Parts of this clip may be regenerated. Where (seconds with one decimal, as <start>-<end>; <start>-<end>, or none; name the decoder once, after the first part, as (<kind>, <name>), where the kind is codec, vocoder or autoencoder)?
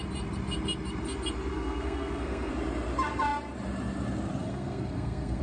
1.5-2.5 (codec, SNAC); 4.4-5.4